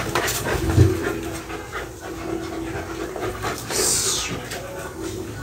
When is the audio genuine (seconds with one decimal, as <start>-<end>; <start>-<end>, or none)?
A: 1.0-3.3; 3.9-4.8